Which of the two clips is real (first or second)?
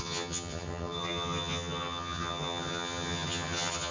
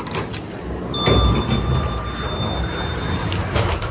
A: second